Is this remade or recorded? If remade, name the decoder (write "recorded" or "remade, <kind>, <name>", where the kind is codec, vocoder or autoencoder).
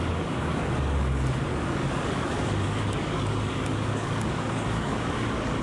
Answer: remade, codec, DAC